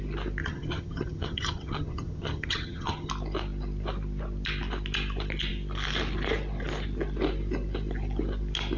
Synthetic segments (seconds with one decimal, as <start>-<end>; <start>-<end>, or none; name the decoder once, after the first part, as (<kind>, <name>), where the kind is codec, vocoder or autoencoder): 0.4-3.1 (vocoder, HiFi-GAN)